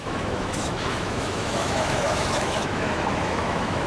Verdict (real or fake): fake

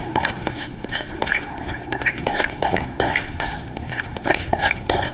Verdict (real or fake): fake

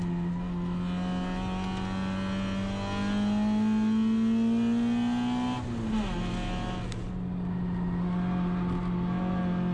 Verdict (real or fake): real